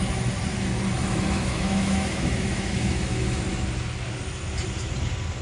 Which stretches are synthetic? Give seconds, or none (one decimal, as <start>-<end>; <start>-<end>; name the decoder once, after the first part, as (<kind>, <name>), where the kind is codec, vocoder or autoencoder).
1.0-3.4 (autoencoder, DAC-VAE)